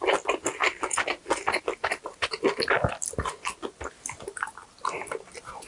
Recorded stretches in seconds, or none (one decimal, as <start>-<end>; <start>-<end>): 0.0-5.7